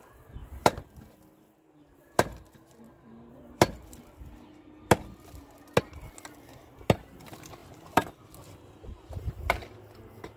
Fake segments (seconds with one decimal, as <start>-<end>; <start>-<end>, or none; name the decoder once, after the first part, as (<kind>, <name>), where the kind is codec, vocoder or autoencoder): 7.6-9.3 (vocoder, BigVGAN v2)